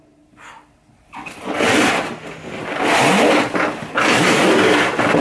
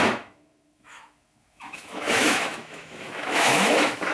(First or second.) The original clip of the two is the first